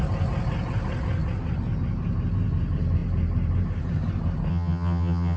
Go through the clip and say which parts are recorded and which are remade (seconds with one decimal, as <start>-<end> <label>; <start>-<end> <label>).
0.0-4.5 recorded; 4.5-5.4 remade

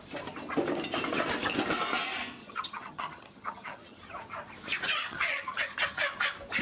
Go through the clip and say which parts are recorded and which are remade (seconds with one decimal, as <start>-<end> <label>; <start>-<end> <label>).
0.0-2.4 recorded; 2.4-4.0 remade; 4.0-5.0 recorded; 5.0-6.0 remade; 6.0-6.6 recorded